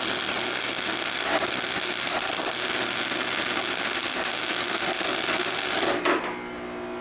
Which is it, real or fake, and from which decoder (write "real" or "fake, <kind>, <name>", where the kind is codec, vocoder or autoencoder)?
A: real